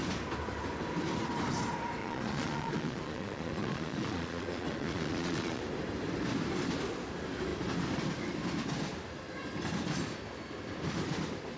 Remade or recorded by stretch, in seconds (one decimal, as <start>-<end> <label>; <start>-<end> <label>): 0.0-2.0 recorded; 2.0-5.6 remade; 5.6-11.6 recorded